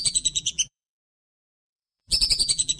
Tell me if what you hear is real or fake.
fake